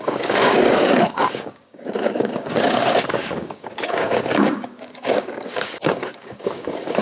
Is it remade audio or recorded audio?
remade